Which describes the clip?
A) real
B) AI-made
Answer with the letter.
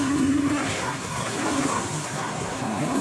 B